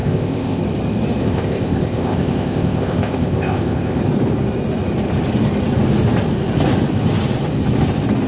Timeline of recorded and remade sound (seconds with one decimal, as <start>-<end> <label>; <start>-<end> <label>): 0.0-0.6 remade; 0.6-1.2 recorded; 1.2-4.0 remade; 4.0-8.3 recorded